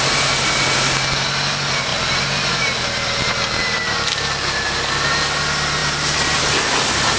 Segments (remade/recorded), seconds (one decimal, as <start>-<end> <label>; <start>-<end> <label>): 0.0-7.2 recorded